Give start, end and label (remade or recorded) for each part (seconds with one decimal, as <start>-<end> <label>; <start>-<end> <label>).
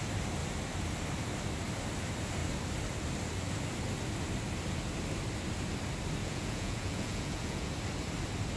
0.0-6.2 recorded; 6.2-7.7 remade; 7.7-8.6 recorded